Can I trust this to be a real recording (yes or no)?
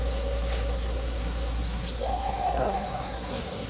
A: no